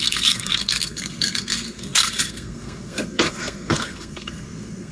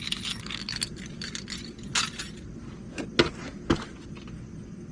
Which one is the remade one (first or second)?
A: first